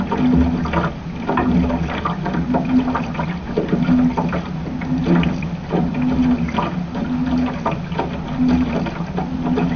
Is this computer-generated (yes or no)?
no